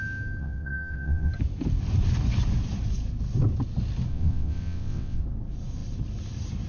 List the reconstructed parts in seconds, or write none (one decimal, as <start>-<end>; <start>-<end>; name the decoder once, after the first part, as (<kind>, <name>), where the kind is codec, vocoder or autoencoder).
0.4-1.3 (vocoder, WaveNeXt); 4.1-5.2

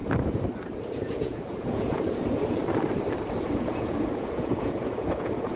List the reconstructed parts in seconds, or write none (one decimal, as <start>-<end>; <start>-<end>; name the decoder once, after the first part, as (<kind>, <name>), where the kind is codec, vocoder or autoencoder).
0.9-2.6 (vocoder, Vocos); 3.4-5.6